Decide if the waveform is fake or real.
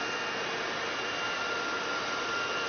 real